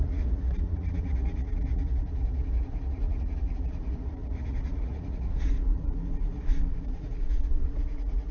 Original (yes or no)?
no